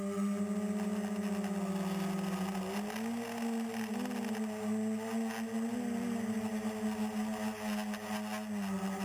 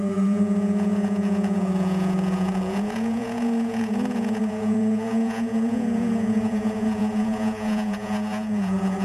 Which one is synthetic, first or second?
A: second